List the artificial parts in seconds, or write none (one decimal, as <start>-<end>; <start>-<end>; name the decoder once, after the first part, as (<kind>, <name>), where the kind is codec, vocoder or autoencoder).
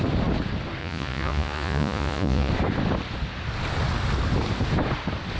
0.8-2.5 (vocoder, Vocos)